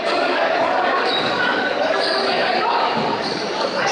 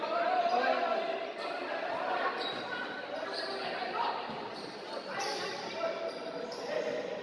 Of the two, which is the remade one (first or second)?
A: first